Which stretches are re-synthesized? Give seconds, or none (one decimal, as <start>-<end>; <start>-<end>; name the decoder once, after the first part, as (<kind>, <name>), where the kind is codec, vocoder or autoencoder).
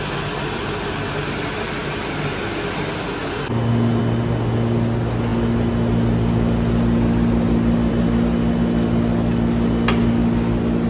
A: none